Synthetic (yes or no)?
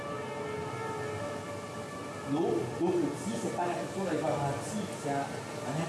no